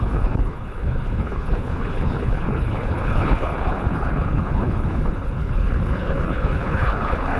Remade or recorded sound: remade